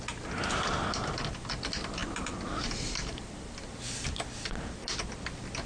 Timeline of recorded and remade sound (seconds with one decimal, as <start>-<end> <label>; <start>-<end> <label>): 0.0-5.7 recorded